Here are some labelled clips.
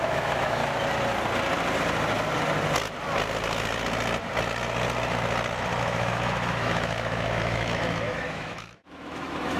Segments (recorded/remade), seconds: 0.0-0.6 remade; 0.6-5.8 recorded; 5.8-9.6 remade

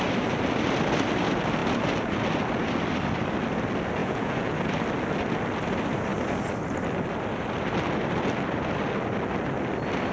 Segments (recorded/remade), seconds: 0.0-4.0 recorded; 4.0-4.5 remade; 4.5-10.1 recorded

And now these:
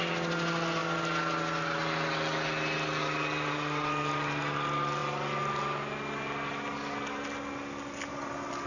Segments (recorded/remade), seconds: 0.0-8.7 recorded

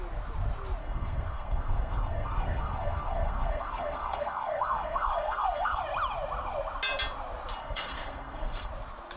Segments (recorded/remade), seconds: 0.0-0.8 recorded; 0.8-5.8 remade; 5.8-7.6 recorded; 7.6-8.7 remade; 8.7-9.2 recorded

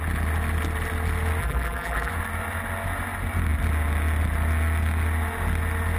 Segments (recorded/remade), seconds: 0.0-1.4 recorded; 1.4-2.1 remade; 2.1-6.0 recorded